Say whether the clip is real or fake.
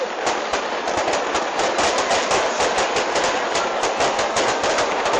real